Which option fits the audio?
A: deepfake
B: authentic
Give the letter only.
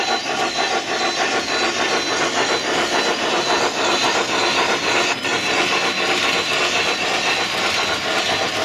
B